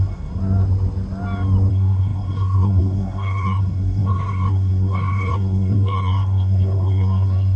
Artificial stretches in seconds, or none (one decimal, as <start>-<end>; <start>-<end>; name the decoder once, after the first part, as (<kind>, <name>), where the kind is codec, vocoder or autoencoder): 0.0-0.4 (codec, SNAC); 1.7-7.6

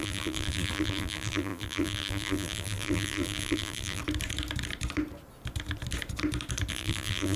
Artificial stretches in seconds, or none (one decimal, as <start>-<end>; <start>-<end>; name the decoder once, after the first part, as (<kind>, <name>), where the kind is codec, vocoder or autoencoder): 0.0-4.0 (vocoder, BigVGAN v2); 6.7-7.4

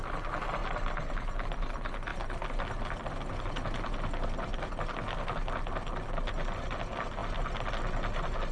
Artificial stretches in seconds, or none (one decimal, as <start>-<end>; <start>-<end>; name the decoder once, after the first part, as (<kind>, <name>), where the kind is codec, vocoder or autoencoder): none

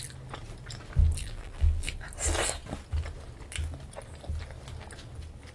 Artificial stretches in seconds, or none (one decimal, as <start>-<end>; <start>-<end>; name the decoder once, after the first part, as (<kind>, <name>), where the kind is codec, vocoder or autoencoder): 1.2-1.9 (vocoder, BigVGAN v2)